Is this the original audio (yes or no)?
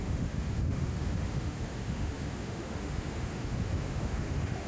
no